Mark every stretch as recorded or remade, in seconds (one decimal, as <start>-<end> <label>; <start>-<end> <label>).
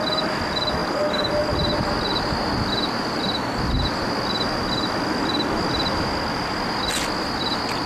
0.0-7.9 recorded